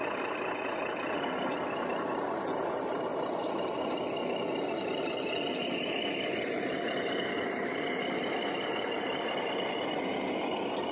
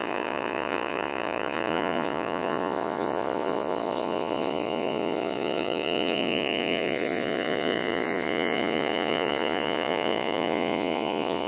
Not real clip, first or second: second